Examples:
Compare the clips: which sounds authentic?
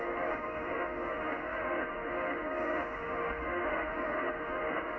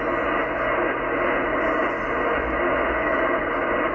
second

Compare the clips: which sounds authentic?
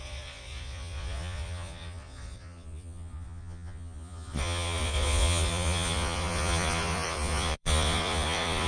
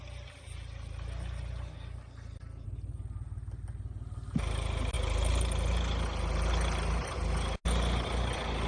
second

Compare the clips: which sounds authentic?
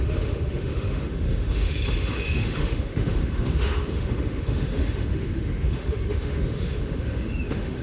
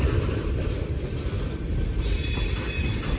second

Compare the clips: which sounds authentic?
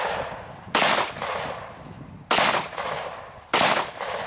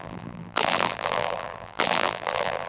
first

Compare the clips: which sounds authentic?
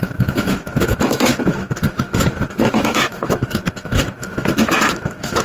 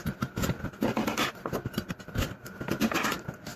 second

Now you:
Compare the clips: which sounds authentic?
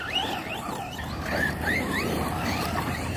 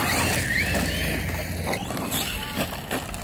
second